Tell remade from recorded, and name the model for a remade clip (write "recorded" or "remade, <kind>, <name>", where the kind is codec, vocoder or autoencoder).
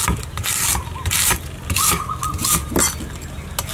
recorded